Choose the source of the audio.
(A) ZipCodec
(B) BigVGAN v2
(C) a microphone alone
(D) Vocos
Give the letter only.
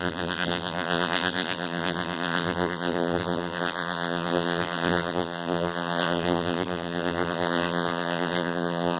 B